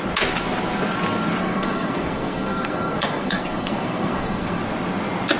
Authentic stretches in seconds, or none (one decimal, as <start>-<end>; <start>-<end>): 0.0-1.4; 4.6-5.4